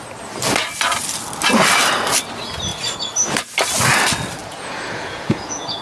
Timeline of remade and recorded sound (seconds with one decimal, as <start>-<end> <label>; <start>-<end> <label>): 0.0-4.4 recorded; 4.4-5.8 remade